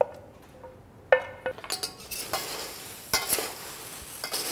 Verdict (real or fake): real